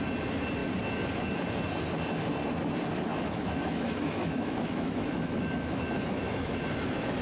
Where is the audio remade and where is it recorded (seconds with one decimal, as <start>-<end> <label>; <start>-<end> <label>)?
0.0-3.1 recorded; 3.1-7.2 remade